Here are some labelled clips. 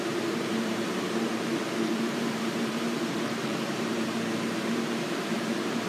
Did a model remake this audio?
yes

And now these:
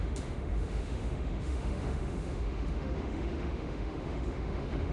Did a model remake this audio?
yes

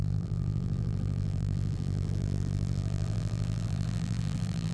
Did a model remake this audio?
yes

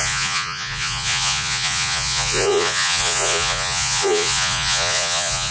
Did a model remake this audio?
yes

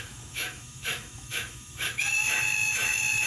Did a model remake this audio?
yes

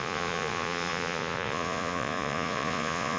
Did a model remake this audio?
yes